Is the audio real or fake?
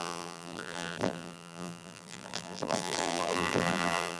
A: fake